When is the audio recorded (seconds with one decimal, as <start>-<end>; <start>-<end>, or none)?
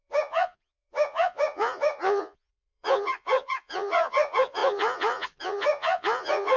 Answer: none